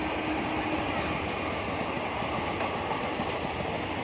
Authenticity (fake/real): real